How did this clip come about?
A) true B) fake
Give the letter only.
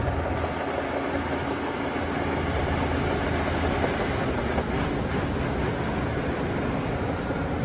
A